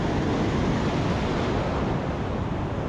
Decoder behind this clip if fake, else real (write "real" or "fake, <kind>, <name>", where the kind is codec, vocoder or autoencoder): real